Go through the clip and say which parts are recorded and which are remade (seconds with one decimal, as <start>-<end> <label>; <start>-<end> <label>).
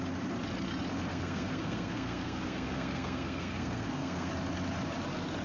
0.0-1.1 recorded; 1.1-4.3 remade; 4.3-5.4 recorded